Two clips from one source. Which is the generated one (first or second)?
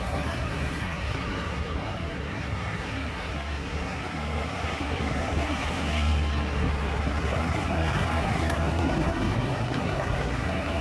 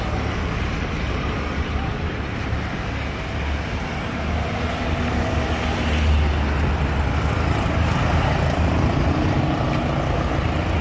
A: first